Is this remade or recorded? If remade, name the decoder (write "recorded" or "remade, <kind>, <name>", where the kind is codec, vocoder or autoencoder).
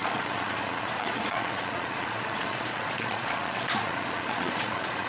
remade, vocoder, Vocos